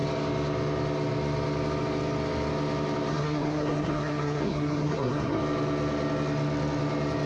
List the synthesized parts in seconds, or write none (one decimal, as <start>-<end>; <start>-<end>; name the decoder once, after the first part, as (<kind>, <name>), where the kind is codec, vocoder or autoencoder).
3.1-5.4 (codec, SNAC)